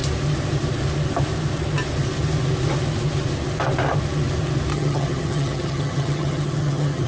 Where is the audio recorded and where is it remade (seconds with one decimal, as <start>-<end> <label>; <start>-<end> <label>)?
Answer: 0.0-4.7 recorded; 4.7-7.1 remade